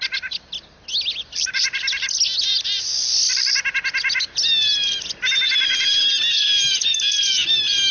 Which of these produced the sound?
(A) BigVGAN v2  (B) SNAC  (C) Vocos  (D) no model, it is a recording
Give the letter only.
D